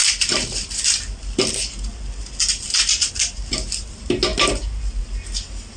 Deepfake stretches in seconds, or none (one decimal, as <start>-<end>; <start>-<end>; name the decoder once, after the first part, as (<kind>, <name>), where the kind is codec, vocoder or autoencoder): none